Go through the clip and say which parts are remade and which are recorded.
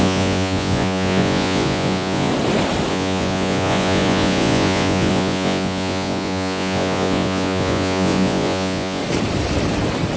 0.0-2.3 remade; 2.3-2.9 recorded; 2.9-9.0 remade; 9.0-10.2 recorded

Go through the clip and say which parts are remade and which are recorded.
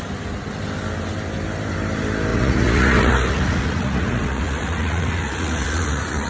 0.0-2.3 recorded; 2.3-6.3 remade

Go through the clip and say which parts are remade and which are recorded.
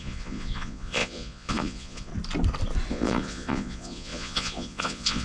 0.0-2.1 remade; 2.1-2.9 recorded; 2.9-5.2 remade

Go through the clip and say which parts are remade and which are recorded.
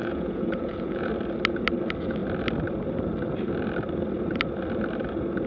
0.0-1.1 remade; 1.1-5.5 recorded